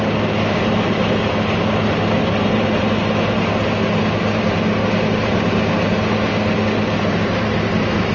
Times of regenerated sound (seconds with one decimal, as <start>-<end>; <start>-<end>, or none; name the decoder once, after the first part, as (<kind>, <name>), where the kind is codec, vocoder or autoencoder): none